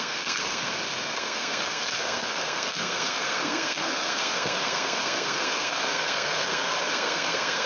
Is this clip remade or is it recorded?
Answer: remade